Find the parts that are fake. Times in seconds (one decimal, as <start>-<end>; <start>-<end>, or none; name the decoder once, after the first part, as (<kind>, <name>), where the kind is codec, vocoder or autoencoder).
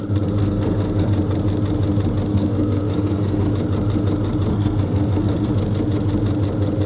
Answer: 0.4-1.1 (codec, SNAC); 2.3-3.5; 4.5-5.5